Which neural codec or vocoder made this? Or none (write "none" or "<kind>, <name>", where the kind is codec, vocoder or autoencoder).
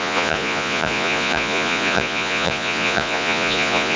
vocoder, Vocos